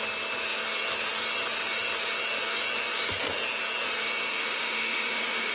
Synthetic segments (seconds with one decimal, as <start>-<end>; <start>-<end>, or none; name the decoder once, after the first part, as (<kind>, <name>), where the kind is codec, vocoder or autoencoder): 4.3-5.5 (autoencoder, DAC-VAE)